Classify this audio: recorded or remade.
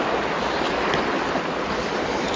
recorded